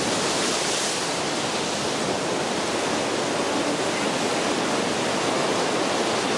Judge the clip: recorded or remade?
recorded